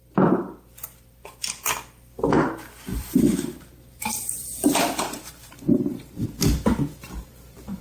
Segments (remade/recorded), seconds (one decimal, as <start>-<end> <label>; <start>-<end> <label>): 0.0-2.9 recorded; 2.9-7.8 remade